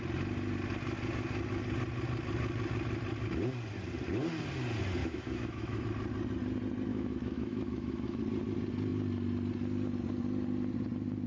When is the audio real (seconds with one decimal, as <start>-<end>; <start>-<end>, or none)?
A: 0.0-5.0; 5.8-6.9; 8.2-11.3